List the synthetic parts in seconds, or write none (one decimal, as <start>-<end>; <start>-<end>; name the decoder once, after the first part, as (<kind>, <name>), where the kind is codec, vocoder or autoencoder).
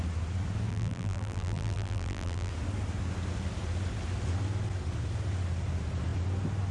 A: 0.7-2.5 (vocoder, BigVGAN v2)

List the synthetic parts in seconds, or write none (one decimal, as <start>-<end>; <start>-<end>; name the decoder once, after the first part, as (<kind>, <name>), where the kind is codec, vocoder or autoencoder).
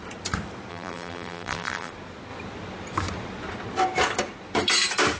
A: 0.7-1.9 (vocoder, BigVGAN v2)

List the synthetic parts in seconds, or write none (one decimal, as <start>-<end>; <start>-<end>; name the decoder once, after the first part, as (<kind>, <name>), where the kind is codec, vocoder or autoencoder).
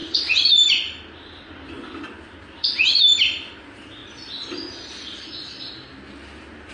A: 0.0-6.7 (vocoder, BigVGAN v2)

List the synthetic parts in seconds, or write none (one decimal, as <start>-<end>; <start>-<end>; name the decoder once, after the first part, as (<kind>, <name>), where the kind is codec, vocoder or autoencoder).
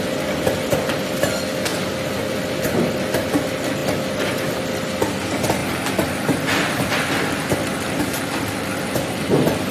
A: none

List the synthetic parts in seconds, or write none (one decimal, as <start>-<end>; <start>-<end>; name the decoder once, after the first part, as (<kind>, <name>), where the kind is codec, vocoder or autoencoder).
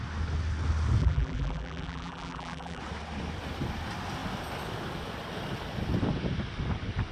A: 1.0-2.8 (vocoder, BigVGAN v2)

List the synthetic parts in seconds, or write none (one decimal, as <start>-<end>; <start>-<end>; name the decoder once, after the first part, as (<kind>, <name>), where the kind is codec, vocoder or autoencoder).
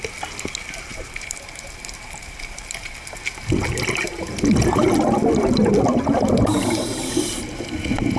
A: 0.9-3.1 (vocoder, BigVGAN v2)